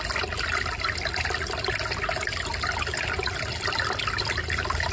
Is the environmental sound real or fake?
real